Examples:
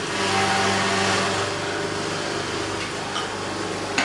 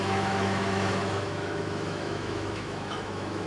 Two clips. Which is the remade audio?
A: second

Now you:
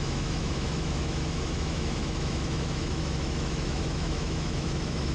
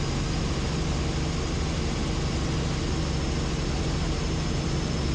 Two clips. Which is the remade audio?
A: first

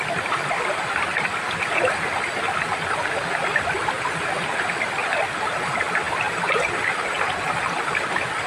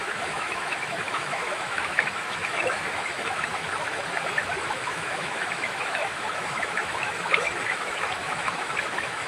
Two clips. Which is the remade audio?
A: second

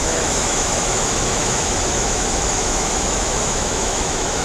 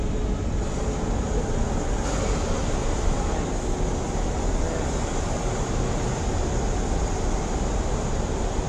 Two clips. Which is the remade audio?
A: first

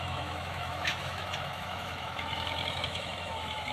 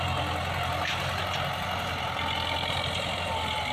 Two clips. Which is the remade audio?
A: first